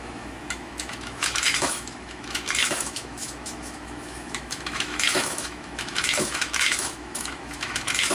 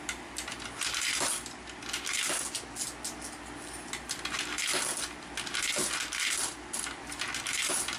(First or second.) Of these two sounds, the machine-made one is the first